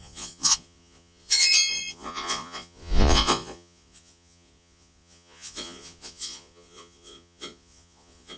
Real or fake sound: fake